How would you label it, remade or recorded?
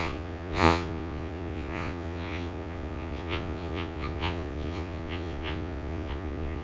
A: remade